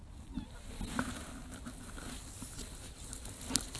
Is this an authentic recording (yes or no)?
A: yes